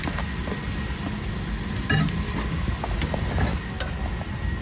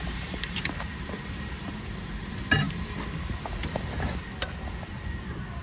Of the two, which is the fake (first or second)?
second